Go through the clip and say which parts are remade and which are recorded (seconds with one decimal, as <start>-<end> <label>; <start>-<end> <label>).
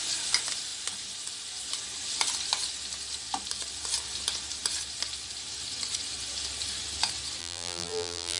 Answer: 0.0-7.4 recorded; 7.4-8.4 remade